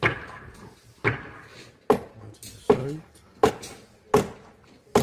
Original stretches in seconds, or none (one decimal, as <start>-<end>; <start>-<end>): 0.0-2.8; 3.5-5.0